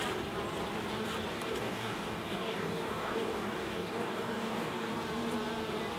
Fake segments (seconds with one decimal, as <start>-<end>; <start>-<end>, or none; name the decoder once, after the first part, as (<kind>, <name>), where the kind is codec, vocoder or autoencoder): 1.3-4.9 (codec, DAC)